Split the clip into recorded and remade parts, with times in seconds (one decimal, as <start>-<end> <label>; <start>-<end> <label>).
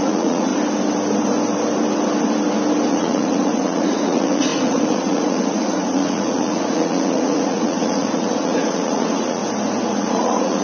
0.0-0.5 remade; 0.5-2.9 recorded; 2.9-9.4 remade; 9.4-9.9 recorded; 9.9-10.6 remade